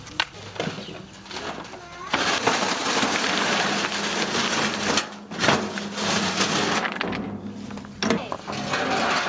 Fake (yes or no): no